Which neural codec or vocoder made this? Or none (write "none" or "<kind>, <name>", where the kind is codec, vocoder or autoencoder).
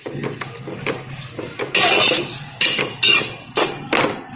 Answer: none